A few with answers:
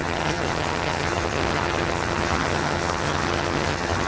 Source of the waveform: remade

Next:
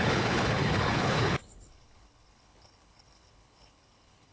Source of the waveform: remade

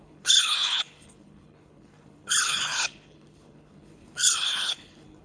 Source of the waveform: remade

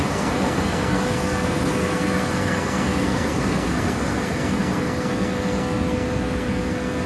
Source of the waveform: remade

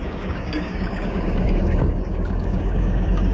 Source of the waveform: remade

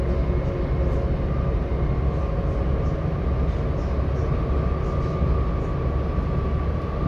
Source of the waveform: recorded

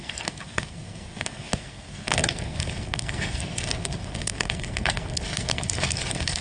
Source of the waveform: remade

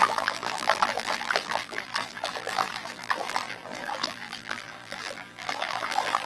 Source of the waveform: remade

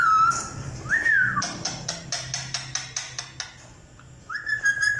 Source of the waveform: recorded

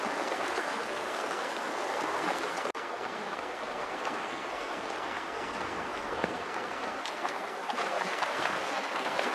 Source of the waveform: remade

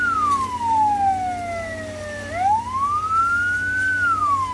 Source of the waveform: recorded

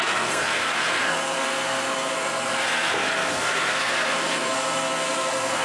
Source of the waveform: remade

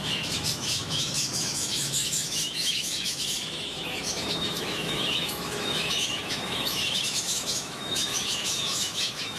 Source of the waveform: remade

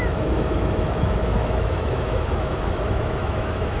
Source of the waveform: remade